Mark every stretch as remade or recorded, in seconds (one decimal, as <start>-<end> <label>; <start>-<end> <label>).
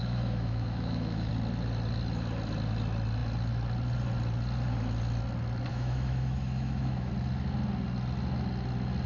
0.0-1.3 remade; 1.3-5.7 recorded; 5.7-7.1 remade; 7.1-9.1 recorded